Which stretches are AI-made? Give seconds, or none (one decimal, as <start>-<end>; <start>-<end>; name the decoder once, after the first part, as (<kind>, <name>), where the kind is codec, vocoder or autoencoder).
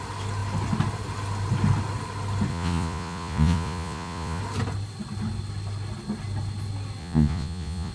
2.5-4.4 (vocoder, Vocos); 7.0-7.9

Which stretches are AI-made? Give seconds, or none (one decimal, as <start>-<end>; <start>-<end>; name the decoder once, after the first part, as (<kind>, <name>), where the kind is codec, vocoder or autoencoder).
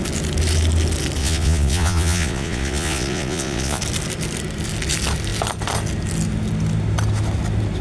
1.2-3.8 (vocoder, Vocos)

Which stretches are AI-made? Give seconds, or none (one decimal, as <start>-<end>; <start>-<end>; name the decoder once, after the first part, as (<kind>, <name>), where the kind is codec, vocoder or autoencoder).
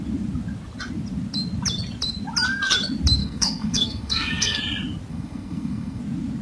3.2-4.6 (codec, SNAC); 5.1-6.0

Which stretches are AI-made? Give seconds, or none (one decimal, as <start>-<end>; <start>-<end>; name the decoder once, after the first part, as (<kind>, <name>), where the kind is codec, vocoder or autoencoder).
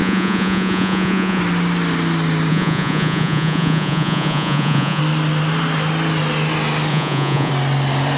0.0-1.4 (vocoder, Vocos); 2.5-5.0; 6.9-7.5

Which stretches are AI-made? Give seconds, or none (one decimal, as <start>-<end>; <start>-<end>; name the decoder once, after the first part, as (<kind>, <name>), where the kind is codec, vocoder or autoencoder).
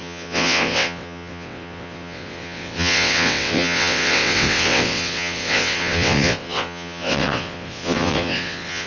0.0-8.9 (vocoder, WaveNeXt)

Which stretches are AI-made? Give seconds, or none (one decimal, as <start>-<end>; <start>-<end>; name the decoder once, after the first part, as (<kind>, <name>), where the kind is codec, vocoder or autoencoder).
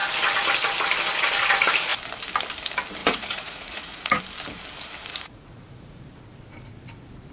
3.0-4.2 (vocoder, Vocos); 5.1-6.0